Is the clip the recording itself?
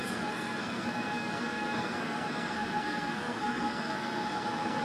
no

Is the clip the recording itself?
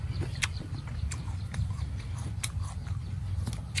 yes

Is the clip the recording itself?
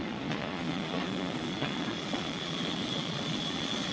no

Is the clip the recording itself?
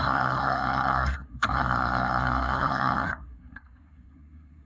no